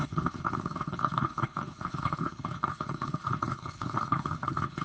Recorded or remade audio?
remade